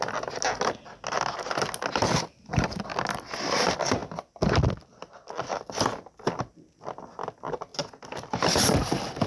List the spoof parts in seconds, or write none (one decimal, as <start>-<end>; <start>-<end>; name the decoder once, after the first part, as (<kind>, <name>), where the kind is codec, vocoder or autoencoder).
none